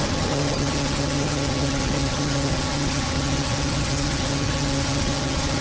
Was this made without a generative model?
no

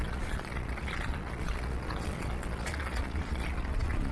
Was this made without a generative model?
no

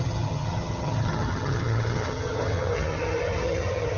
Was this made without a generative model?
no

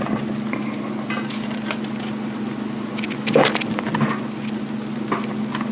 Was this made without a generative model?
yes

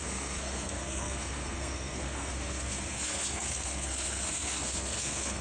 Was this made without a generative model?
no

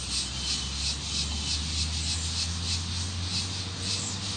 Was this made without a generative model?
yes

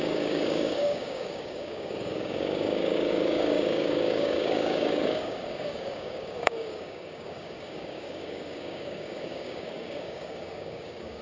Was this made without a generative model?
no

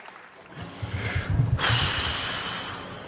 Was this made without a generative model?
yes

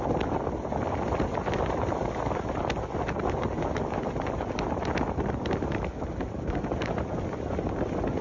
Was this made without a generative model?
yes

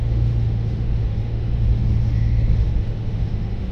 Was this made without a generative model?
no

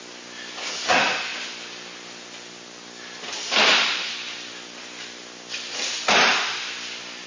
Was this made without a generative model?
yes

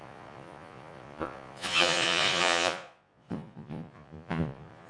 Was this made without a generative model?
no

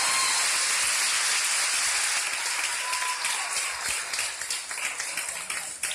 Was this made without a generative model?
yes